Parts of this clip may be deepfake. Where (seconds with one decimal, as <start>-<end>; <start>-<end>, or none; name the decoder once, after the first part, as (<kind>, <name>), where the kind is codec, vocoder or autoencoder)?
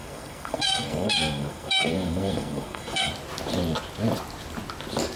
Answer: 0.0-3.1 (codec, SNAC)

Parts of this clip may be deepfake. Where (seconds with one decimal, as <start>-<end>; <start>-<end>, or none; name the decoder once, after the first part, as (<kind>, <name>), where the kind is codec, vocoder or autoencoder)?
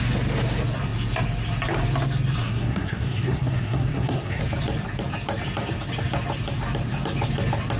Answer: 2.4-4.4 (codec, SNAC)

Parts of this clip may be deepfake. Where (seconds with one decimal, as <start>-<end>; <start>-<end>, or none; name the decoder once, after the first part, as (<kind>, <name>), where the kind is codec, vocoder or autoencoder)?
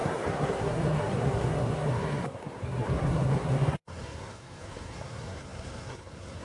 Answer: 0.0-6.4 (codec, SNAC)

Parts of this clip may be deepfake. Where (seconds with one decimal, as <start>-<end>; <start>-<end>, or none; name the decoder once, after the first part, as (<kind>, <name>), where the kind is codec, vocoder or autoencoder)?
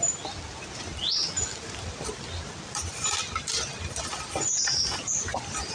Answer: none